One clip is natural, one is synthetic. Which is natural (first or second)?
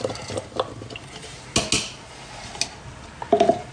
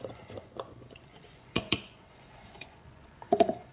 first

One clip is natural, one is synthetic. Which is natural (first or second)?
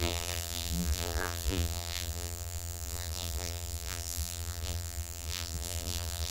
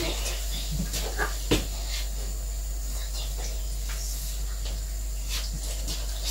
second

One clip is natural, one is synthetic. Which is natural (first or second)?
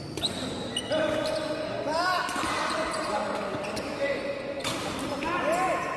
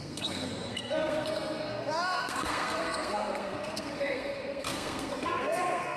first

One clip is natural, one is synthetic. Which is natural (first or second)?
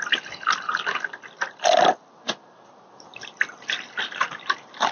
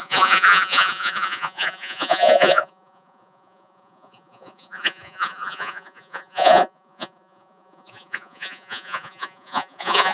first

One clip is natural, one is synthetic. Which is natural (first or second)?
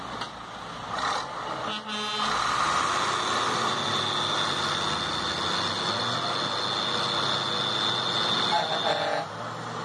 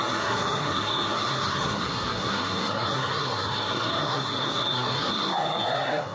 first